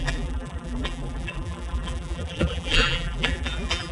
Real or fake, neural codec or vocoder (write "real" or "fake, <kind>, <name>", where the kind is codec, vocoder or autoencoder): fake, vocoder, BigVGAN v2